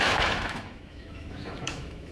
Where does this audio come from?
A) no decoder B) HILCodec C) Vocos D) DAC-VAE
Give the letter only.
D